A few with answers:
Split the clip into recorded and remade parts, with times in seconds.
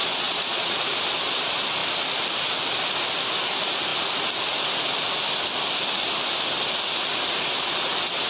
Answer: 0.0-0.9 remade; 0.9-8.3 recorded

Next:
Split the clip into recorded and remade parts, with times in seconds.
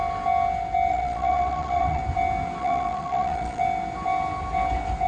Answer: 0.0-0.9 recorded; 0.9-2.0 remade; 2.0-2.6 recorded; 2.6-3.6 remade; 3.6-5.1 recorded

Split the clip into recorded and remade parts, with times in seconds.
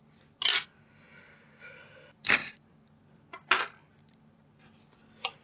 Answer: 0.0-5.4 recorded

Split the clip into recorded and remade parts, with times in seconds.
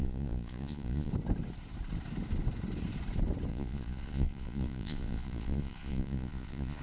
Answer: 0.0-1.1 remade; 1.1-3.5 recorded; 3.5-6.8 remade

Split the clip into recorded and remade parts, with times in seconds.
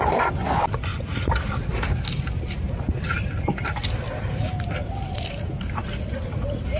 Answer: 0.0-6.8 recorded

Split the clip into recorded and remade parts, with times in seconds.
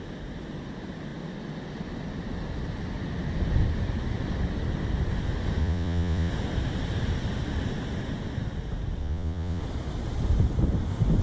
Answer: 0.0-5.6 recorded; 5.6-6.3 remade; 6.3-9.0 recorded; 9.0-9.6 remade; 9.6-11.2 recorded